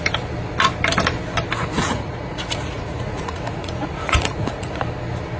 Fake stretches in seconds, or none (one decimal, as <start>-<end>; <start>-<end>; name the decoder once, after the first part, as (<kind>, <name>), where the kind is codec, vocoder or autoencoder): 1.6-4.8 (vocoder, Vocos)

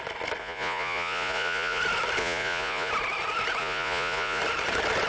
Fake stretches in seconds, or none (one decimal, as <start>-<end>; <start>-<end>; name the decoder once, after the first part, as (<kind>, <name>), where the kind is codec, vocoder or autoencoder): 0.4-1.8 (vocoder, Vocos); 2.2-2.9; 3.6-4.4

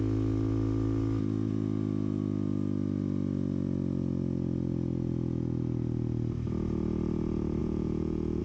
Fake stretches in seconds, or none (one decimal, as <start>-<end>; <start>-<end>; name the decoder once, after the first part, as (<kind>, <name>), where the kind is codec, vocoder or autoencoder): 7.6-8.4 (vocoder, Vocos)

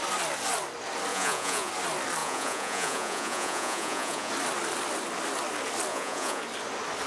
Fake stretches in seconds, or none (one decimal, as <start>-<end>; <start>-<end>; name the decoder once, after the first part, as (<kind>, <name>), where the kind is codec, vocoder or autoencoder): 1.1-1.7 (vocoder, Vocos); 2.2-4.3; 5.9-6.4

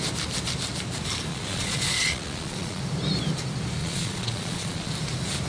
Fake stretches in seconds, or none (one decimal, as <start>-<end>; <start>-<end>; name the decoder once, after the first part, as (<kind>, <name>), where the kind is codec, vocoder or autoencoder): 1.3-2.8 (vocoder, Vocos); 3.8-4.9

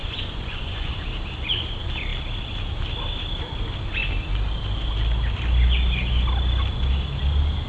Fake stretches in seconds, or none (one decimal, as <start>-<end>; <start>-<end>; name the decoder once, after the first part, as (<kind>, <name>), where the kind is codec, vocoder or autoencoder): 0.0-0.9 (vocoder, Vocos)

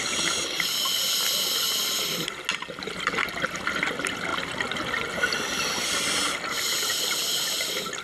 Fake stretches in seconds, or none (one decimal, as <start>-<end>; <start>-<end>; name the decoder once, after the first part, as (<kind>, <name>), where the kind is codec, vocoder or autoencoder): none